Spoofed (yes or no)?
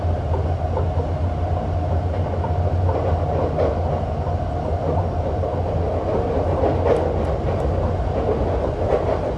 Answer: no